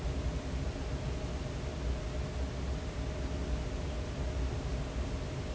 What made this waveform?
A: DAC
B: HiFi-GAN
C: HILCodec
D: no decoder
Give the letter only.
D